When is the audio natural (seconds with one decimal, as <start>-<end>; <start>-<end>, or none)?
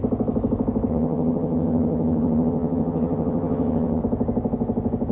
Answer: 0.0-0.9; 4.0-5.1